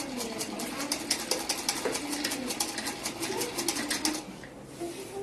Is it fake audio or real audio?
real